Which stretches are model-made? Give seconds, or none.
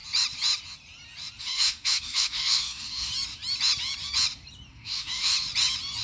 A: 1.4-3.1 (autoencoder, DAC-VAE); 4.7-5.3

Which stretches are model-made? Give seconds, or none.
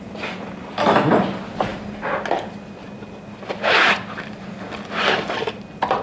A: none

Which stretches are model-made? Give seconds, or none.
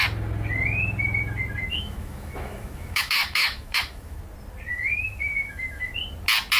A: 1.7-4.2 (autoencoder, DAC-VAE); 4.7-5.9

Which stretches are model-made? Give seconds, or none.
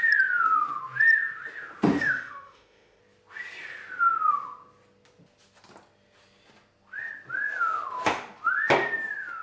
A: 2.0-3.0 (autoencoder, DAC-VAE)